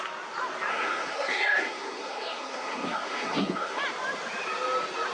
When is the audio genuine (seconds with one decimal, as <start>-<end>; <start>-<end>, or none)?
0.0-0.7; 3.8-5.1